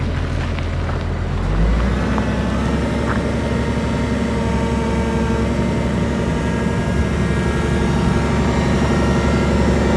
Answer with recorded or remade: recorded